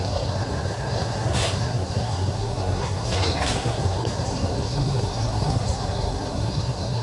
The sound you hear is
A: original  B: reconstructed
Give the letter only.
B